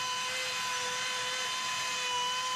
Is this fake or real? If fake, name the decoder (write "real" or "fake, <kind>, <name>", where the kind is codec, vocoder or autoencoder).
real